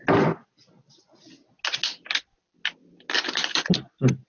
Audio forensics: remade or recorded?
recorded